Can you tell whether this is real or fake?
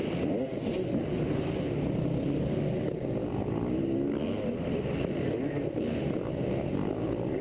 real